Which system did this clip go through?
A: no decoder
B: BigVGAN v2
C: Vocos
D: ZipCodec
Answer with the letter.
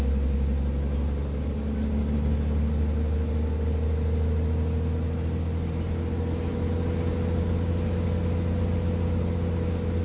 A